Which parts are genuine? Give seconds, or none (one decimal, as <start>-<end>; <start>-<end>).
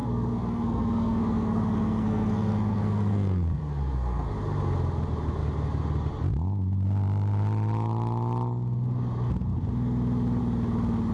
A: 4.3-11.1